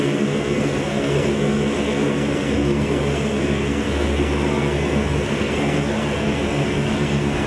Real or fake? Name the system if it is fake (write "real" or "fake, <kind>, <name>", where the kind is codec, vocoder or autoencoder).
fake, codec, SNAC